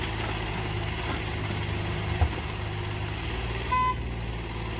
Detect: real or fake real